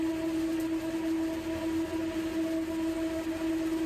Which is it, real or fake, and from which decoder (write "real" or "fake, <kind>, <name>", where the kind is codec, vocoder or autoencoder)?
real